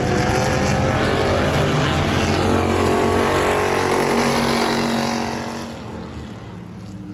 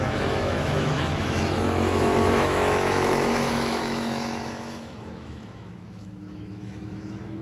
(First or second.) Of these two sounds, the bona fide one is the first